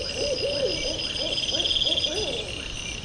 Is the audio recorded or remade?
recorded